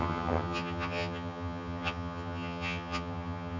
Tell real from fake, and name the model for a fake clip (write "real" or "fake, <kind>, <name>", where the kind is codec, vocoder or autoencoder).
fake, vocoder, HiFi-GAN